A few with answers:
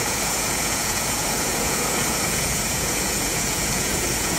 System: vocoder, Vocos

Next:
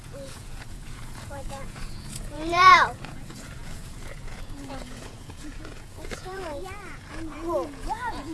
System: vocoder, Vocos